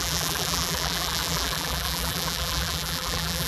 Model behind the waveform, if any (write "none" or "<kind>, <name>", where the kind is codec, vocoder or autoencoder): vocoder, BigVGAN v2